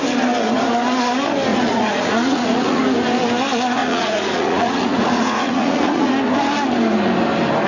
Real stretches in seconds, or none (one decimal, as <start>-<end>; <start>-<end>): 0.0-1.5; 2.8-3.8; 6.1-7.7